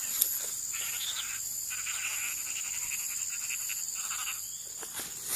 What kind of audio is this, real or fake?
real